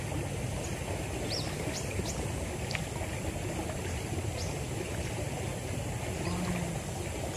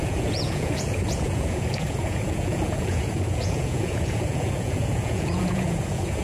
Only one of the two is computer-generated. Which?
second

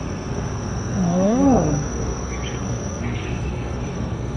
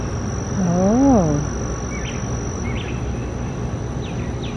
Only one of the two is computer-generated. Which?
first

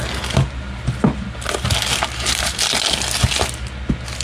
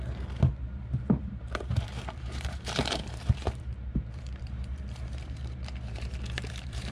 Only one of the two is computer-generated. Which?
second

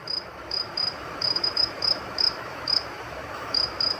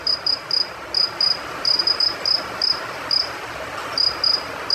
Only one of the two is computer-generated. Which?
first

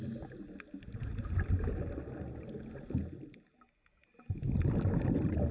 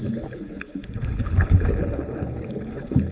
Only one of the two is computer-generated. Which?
second